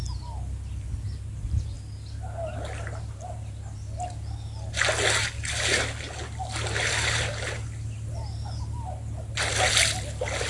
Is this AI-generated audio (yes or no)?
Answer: no